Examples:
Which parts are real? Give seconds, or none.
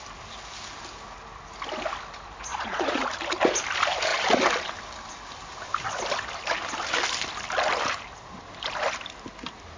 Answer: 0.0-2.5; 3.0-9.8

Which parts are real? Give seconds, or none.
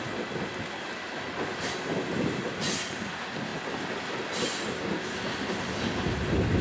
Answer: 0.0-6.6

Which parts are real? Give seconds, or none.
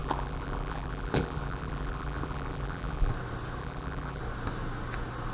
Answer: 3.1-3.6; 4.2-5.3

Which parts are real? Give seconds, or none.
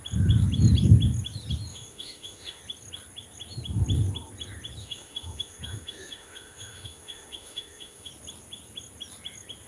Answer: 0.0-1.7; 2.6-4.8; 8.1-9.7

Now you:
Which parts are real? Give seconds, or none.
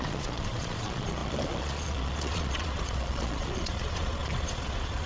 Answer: none